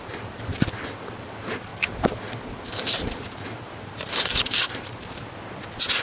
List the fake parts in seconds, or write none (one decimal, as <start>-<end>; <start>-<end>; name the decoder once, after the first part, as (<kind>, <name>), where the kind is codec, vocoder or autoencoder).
1.7-5.3 (vocoder, BigVGAN v2)